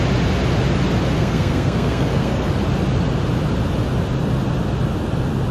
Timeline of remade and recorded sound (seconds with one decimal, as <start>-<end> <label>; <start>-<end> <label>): 0.0-1.2 recorded; 1.2-2.5 remade; 2.5-5.5 recorded